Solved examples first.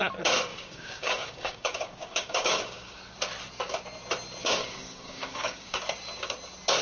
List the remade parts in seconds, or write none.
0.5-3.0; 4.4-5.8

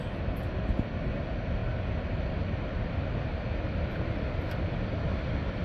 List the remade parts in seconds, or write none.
none

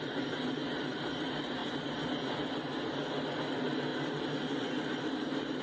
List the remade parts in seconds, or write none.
none